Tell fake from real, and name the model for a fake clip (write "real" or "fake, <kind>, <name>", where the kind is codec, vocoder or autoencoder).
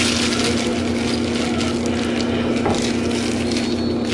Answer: real